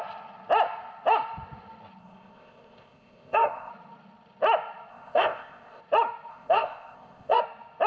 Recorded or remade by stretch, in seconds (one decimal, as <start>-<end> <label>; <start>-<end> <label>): 0.0-2.0 recorded; 2.0-3.7 remade; 3.7-4.9 recorded; 4.9-5.8 remade; 5.8-6.3 recorded; 6.3-7.4 remade; 7.4-7.9 recorded